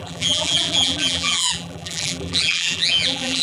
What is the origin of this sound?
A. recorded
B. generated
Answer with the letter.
B